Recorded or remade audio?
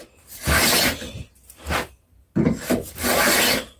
recorded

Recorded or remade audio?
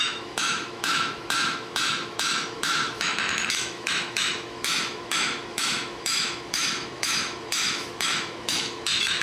remade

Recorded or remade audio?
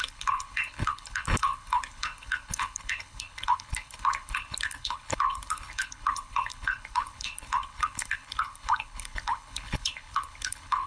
remade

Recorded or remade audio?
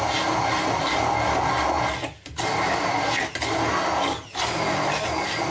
recorded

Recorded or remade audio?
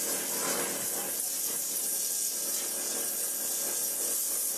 recorded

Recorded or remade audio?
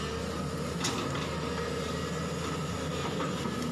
recorded